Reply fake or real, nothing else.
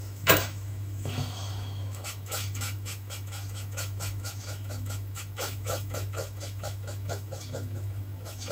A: fake